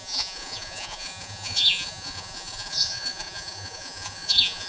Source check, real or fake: fake